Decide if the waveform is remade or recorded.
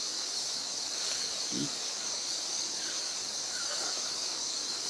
remade